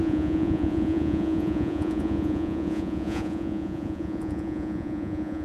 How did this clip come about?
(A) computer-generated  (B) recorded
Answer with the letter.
A